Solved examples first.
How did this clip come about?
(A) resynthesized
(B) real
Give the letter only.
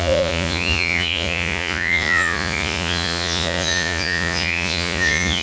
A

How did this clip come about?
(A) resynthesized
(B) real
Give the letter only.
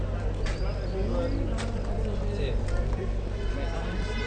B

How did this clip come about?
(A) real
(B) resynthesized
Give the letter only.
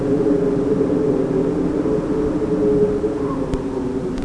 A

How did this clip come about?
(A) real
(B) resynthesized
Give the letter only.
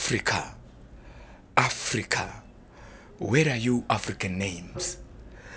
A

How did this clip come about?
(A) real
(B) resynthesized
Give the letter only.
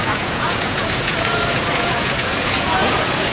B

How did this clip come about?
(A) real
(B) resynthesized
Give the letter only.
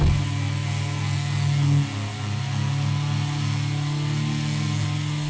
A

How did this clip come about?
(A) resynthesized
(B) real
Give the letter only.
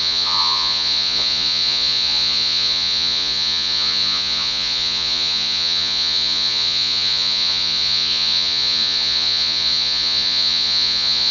A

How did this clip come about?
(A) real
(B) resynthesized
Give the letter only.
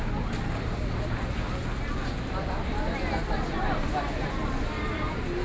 A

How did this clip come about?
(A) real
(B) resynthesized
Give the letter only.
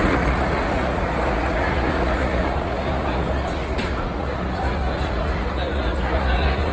B